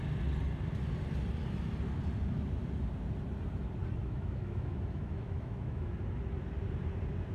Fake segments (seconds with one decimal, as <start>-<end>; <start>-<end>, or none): 4.0-5.9